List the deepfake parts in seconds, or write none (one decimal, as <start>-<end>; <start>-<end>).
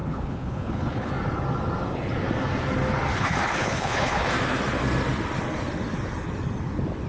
0.0-1.1; 3.1-4.3